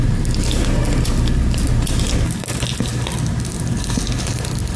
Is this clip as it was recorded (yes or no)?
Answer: yes